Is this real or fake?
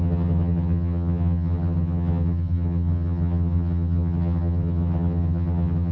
fake